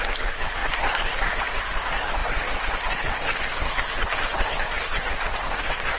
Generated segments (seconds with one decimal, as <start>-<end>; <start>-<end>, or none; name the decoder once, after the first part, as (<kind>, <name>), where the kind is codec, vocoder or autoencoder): 0.0-6.0 (codec, SNAC)